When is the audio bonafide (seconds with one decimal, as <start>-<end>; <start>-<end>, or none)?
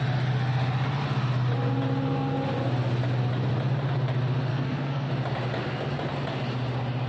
0.0-4.5; 5.1-7.1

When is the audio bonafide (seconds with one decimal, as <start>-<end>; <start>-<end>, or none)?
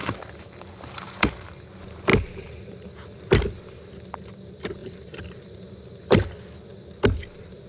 1.3-4.8; 6.3-7.7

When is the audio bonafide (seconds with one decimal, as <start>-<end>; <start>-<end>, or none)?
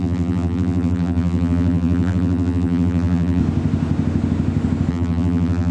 3.4-4.9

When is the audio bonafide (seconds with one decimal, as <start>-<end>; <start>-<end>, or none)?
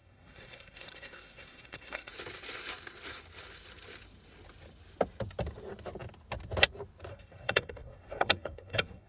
2.1-7.1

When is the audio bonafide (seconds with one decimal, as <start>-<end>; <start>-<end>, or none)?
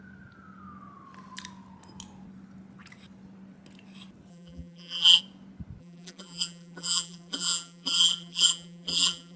0.0-4.3; 5.2-5.8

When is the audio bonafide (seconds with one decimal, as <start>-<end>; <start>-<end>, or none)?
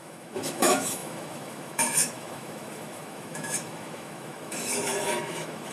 none